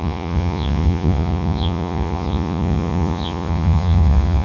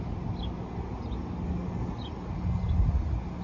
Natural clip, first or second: second